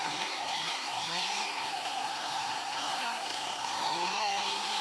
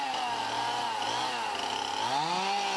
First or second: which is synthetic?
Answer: first